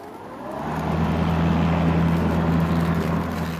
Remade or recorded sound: recorded